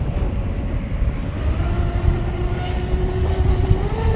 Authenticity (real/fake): real